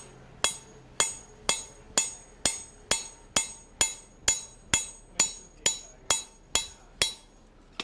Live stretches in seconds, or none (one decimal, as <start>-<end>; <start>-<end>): 0.0-7.8